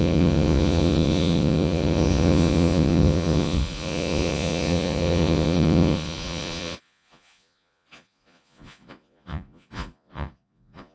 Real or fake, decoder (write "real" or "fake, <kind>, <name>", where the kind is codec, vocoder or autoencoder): fake, vocoder, Vocos